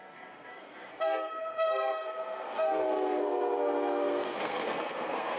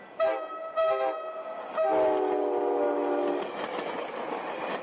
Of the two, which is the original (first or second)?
second